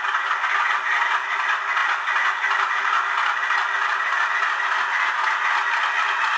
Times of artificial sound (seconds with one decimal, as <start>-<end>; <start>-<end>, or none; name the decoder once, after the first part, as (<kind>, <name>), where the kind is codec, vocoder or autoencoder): none